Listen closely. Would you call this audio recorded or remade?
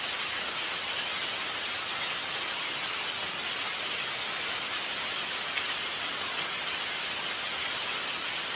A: recorded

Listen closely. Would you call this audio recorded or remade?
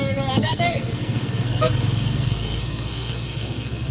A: remade